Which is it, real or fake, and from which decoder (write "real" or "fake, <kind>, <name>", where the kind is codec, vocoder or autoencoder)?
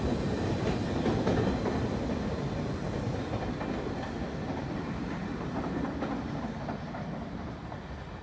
real